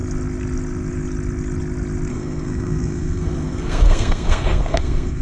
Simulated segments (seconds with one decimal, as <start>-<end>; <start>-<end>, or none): 2.1-5.2